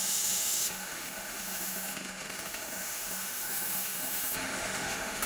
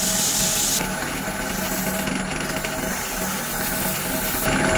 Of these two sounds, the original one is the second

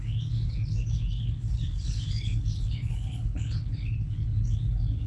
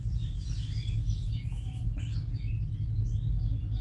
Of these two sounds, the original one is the second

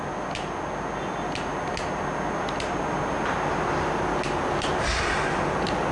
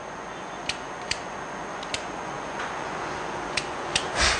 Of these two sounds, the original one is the first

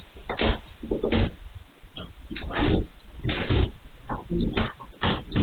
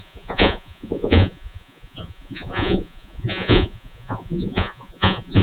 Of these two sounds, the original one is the first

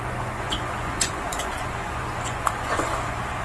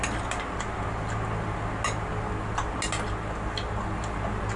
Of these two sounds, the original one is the second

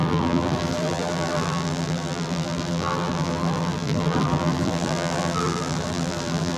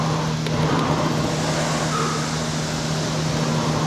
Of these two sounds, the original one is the second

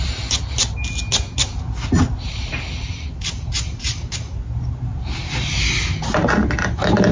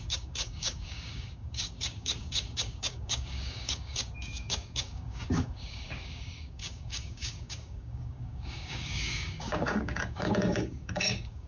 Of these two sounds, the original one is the first